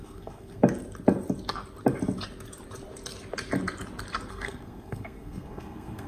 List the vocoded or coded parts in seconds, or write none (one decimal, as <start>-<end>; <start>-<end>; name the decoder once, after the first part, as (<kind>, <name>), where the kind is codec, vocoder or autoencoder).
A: 0.0-0.6 (codec, SNAC); 4.3-6.1